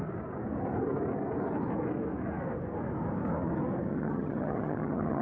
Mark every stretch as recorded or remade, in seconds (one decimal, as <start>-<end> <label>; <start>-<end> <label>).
0.0-3.9 recorded; 3.9-5.2 remade